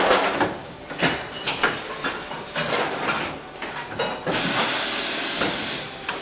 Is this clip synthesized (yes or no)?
no